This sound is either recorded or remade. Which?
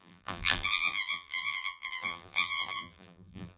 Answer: remade